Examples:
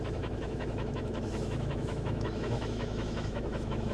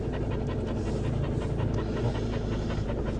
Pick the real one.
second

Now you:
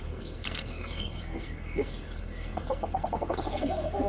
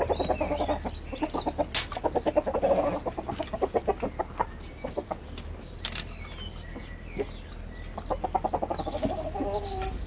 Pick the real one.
second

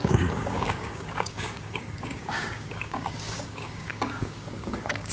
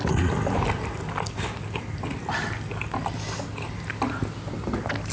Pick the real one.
second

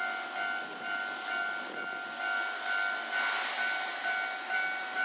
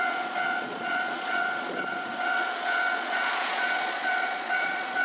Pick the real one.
first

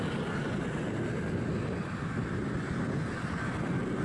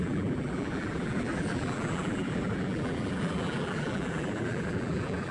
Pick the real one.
first